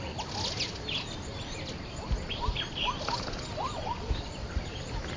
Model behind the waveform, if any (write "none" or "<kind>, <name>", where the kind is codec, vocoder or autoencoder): none